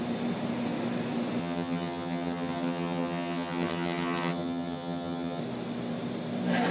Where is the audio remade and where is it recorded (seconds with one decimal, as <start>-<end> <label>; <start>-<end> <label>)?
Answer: 0.0-1.4 recorded; 1.4-5.4 remade; 5.4-6.7 recorded